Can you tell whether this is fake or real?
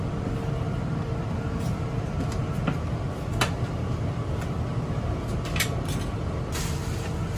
real